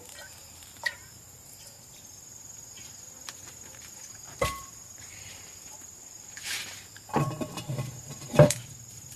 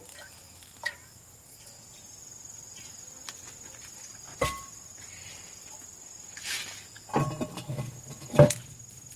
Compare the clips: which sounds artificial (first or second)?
first